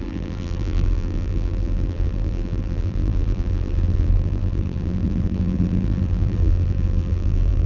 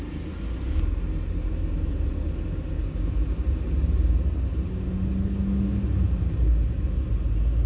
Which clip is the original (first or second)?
second